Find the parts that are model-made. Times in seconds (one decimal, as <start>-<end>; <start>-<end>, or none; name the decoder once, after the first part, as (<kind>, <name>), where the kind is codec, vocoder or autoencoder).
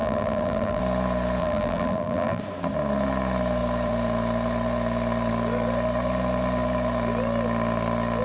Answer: 0.0-0.8 (vocoder, BigVGAN v2); 1.4-2.4